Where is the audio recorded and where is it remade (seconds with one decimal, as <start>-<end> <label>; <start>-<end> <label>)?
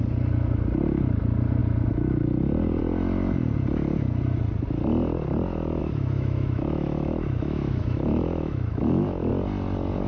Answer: 0.0-5.8 recorded; 5.8-9.3 remade; 9.3-10.1 recorded